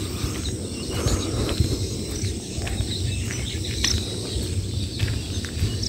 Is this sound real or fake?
real